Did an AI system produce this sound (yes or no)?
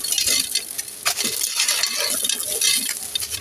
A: no